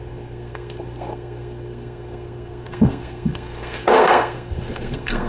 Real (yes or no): no